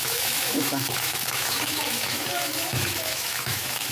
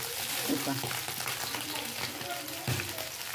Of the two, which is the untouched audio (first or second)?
second